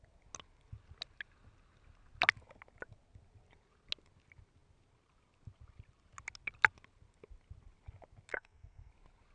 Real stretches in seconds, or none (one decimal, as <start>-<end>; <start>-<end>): 0.0-8.3; 8.9-9.3